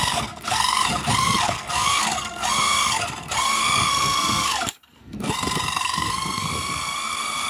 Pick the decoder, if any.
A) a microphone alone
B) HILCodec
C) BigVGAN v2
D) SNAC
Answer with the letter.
D